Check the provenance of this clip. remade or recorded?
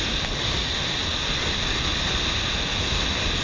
recorded